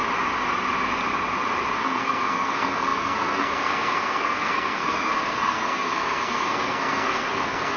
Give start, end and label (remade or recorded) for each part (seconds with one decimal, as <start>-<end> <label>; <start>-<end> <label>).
0.0-1.8 recorded; 1.8-7.8 remade

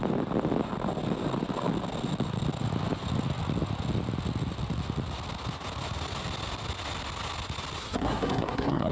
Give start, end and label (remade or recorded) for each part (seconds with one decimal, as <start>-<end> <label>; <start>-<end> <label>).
0.0-7.8 recorded; 7.8-8.9 remade

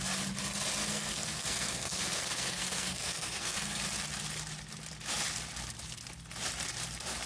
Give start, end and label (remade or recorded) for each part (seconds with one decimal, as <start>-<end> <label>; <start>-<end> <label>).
0.0-0.8 recorded; 0.8-3.8 remade; 3.8-7.3 recorded

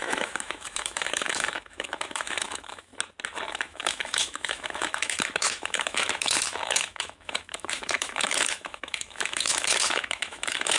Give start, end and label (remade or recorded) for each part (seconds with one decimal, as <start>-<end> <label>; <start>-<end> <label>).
0.0-2.9 remade; 2.9-3.5 recorded; 3.5-10.8 remade

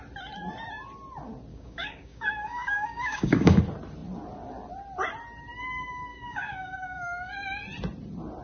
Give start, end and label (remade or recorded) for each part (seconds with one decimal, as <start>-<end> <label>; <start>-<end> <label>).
0.0-1.5 recorded; 1.5-3.6 remade; 3.6-6.1 recorded; 6.1-7.3 remade; 7.3-8.4 recorded

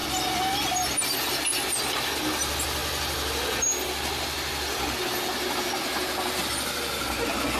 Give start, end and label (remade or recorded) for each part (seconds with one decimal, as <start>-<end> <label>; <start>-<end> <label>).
0.0-7.6 recorded

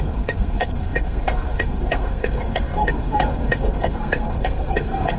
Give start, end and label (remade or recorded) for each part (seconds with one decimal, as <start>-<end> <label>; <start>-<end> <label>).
0.0-5.2 remade